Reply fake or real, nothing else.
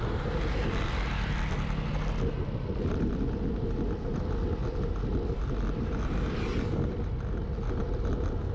real